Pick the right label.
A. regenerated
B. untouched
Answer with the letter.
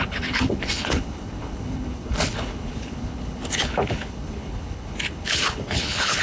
A